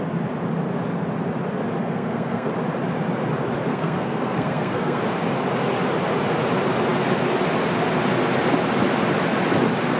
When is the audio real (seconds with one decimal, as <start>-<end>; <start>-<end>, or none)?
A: 0.0-1.8; 2.5-3.7; 5.0-10.0